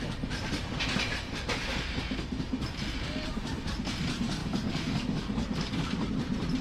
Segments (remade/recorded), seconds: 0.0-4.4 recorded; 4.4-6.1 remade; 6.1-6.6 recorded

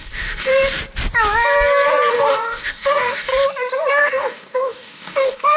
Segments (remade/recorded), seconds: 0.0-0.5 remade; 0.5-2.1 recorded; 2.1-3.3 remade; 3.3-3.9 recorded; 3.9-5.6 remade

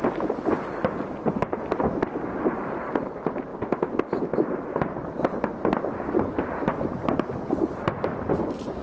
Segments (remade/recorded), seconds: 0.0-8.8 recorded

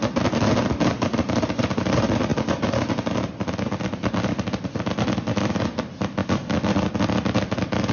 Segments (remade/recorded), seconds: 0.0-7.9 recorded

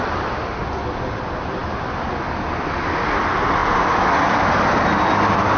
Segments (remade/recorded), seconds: 0.0-5.6 recorded